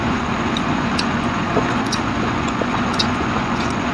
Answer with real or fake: fake